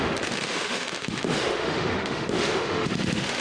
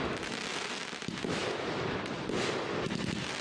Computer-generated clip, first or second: first